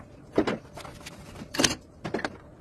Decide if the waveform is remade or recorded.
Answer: recorded